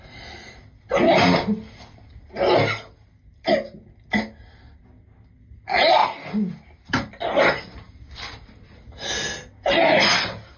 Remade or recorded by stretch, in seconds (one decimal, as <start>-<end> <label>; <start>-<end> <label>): 0.0-10.6 recorded